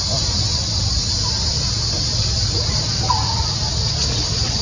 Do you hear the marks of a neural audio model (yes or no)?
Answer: no